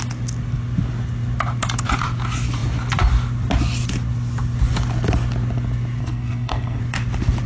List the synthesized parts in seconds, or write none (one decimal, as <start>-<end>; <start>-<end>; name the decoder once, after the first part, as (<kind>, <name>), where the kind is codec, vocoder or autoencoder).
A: 6.0-6.8 (codec, SNAC)